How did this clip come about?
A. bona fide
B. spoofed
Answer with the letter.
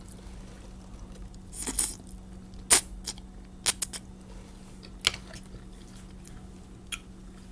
A